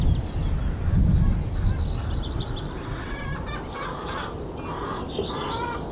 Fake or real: real